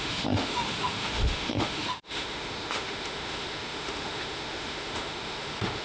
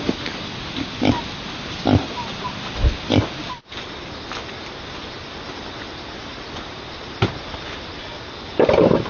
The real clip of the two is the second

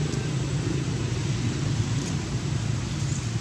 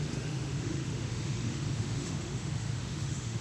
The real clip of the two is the first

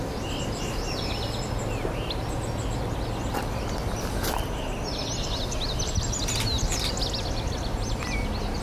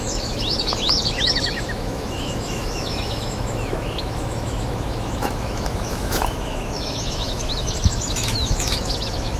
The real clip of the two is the first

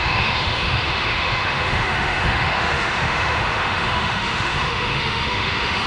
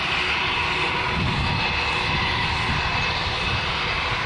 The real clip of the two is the second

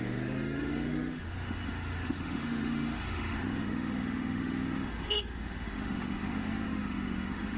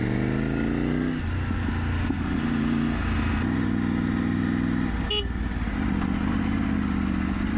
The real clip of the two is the second